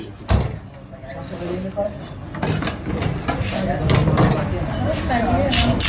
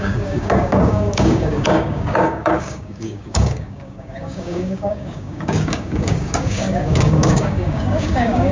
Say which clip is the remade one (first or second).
second